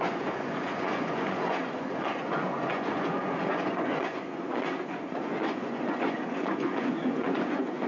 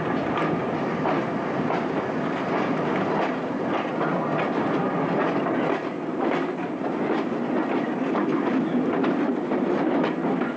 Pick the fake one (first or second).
first